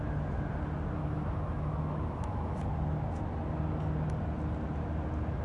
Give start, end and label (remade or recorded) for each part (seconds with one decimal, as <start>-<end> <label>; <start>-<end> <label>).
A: 0.0-1.0 recorded; 1.0-2.7 remade; 2.7-5.4 recorded